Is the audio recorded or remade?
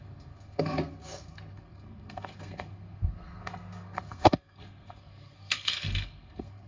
remade